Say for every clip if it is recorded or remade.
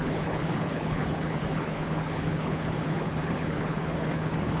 remade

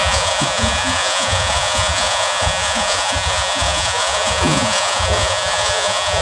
remade